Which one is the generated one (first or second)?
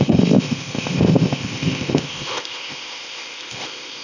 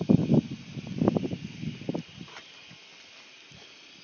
first